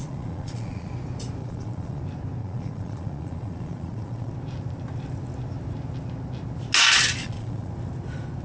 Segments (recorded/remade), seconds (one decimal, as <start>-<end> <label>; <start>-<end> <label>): 0.0-0.9 remade; 0.9-1.4 recorded; 1.4-2.0 remade; 2.0-2.4 recorded; 2.4-4.3 remade; 4.3-7.2 recorded; 7.2-7.7 remade; 7.7-8.4 recorded